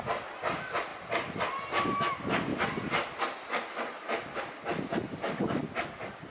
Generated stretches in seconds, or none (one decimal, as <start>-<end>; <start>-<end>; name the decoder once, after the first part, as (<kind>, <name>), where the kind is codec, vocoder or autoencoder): 0.9-2.1 (vocoder, BigVGAN v2); 2.5-5.6